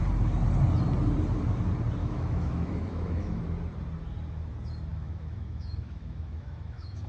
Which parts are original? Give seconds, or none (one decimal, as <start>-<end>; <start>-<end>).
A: 0.0-2.0; 3.4-4.9